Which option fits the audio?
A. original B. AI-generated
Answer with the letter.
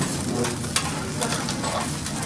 A